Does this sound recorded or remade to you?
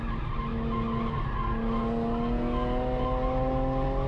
recorded